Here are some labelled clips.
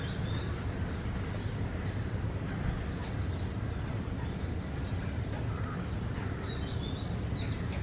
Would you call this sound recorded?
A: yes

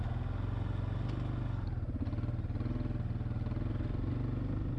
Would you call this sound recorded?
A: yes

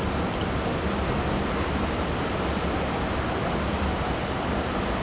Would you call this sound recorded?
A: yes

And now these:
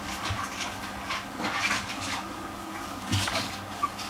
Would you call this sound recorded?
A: no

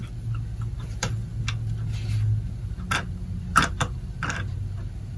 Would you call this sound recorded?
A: yes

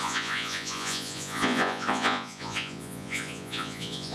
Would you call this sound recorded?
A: no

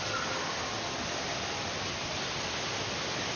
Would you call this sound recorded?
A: yes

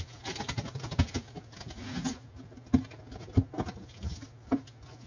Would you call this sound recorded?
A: yes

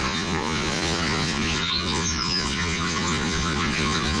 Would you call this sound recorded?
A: no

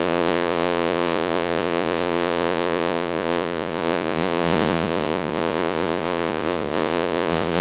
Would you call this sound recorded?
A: no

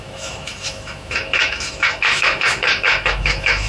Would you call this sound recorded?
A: no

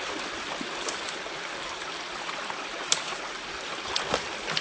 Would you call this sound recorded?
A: yes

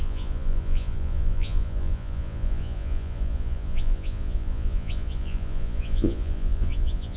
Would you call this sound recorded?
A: no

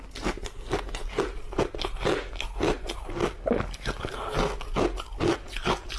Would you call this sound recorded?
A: yes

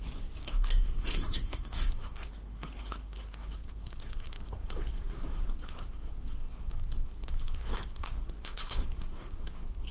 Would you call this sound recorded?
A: no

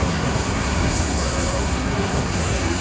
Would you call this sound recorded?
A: no